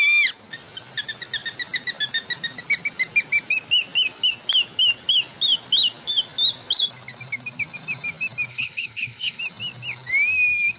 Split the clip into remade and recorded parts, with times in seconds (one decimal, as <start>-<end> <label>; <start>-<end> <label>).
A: 0.0-8.5 recorded; 8.5-9.4 remade; 9.4-10.8 recorded